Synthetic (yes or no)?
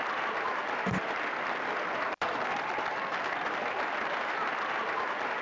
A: no